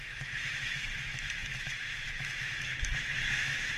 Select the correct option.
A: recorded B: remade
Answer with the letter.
B